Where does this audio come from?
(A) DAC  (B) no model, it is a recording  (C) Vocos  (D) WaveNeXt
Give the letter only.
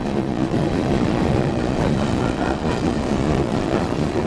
C